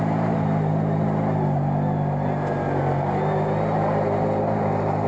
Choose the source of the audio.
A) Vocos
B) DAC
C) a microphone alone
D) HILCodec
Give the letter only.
C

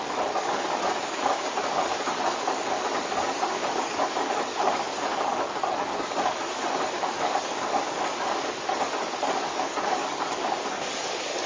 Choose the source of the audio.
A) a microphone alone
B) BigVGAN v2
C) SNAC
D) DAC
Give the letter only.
D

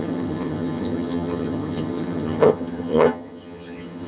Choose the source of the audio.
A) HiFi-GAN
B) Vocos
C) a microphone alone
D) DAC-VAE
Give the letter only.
A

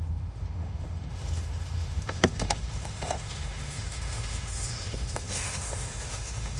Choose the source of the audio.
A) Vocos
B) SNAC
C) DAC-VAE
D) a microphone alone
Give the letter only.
C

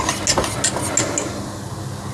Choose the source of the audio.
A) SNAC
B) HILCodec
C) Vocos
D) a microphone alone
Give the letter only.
D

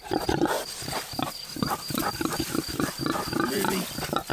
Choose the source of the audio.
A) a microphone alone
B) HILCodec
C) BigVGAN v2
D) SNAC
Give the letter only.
A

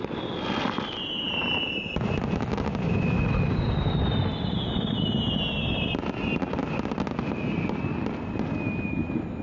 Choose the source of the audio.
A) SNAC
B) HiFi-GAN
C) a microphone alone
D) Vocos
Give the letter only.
C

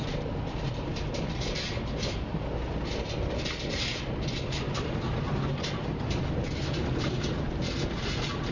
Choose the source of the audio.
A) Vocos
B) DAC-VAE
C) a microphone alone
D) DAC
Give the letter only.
C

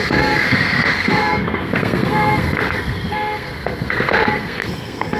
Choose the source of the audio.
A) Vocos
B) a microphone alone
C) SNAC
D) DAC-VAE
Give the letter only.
C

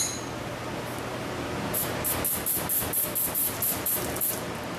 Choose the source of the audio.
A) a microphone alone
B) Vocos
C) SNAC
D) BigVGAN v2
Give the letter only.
A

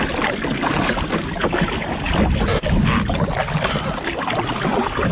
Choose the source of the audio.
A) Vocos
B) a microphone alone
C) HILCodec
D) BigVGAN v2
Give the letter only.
B